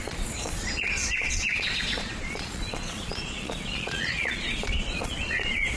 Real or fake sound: fake